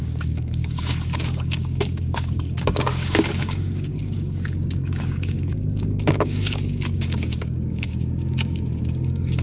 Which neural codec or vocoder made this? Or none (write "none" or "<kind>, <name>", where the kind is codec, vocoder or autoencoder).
codec, DAC